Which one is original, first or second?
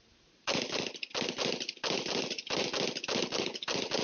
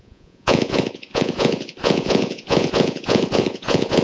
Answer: first